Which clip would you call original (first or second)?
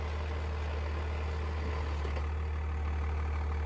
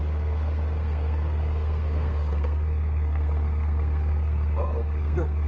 first